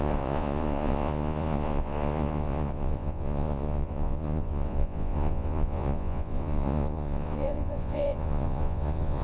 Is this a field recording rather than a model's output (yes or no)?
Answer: no